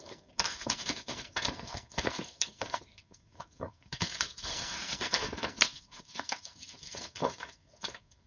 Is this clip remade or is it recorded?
remade